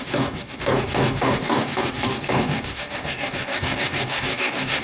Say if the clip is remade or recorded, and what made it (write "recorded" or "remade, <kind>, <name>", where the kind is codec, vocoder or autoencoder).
remade, codec, DAC